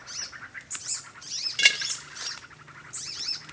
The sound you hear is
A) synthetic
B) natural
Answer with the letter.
B